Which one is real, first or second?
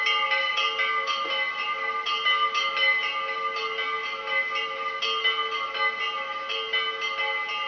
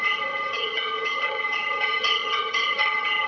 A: first